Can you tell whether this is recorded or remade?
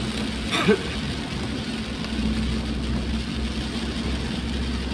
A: recorded